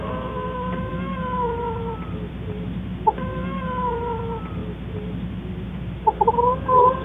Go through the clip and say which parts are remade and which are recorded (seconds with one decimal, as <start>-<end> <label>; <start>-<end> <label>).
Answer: 0.0-7.0 recorded